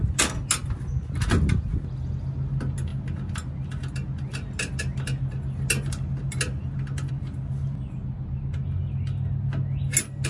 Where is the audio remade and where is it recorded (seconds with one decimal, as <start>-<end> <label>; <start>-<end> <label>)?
0.0-10.3 recorded